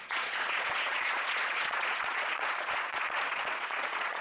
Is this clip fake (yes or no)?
yes